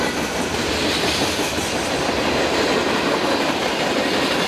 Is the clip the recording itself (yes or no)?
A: yes